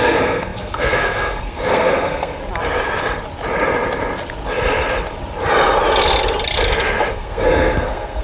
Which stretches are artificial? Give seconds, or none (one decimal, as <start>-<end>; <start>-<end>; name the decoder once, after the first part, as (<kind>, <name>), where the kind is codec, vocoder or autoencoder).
0.0-2.4 (codec, SNAC); 7.1-8.2